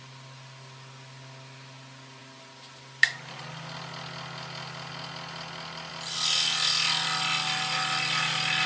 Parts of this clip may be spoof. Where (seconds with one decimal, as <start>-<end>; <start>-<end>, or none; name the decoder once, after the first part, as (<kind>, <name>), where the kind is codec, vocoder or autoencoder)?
none

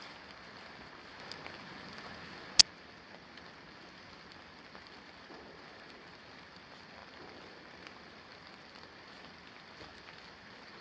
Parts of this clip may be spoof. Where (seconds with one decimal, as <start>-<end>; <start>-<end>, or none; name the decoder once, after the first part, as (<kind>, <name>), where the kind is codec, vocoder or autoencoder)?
none

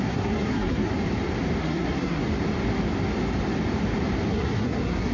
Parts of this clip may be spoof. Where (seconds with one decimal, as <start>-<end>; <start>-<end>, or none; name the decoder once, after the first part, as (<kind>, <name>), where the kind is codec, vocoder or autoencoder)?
0.0-0.9 (codec, SNAC); 1.6-2.2; 4.3-5.1

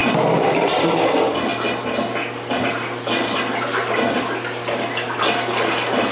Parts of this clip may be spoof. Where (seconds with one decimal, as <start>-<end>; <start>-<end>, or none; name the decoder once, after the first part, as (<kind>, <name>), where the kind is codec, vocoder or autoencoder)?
none

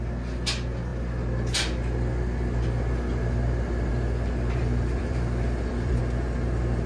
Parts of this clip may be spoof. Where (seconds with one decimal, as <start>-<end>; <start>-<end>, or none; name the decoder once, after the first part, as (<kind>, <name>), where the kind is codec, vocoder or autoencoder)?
4.6-6.0 (vocoder, BigVGAN v2)